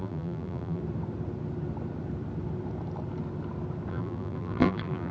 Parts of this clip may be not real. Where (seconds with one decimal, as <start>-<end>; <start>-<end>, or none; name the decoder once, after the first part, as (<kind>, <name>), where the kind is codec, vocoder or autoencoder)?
0.0-0.8 (vocoder, BigVGAN v2); 3.9-5.1